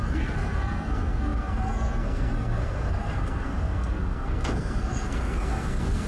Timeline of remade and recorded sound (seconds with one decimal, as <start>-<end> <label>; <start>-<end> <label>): 0.0-6.1 remade